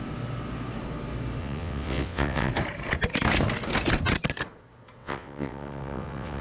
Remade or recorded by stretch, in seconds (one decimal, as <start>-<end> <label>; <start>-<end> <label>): 0.0-1.4 recorded; 1.4-2.5 remade; 2.5-5.0 recorded; 5.0-6.4 remade